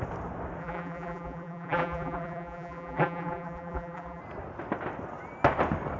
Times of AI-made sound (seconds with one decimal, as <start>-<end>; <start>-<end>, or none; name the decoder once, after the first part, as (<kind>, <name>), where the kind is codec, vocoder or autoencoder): 0.6-4.2 (vocoder, BigVGAN v2)